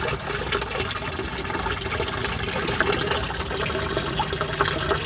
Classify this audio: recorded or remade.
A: recorded